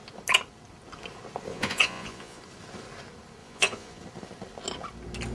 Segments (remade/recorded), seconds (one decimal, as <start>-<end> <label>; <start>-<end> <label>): 0.0-1.5 recorded; 1.5-2.4 remade; 2.4-3.4 recorded; 3.4-4.0 remade; 4.0-5.3 recorded